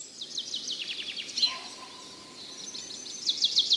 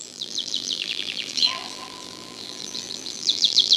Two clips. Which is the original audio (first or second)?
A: first